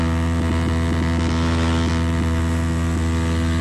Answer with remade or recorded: recorded